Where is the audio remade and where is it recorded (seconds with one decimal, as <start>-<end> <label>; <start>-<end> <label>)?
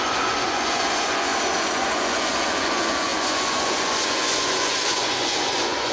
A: 0.0-5.9 remade